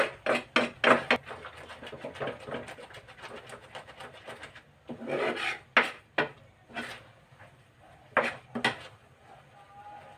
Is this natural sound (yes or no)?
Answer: yes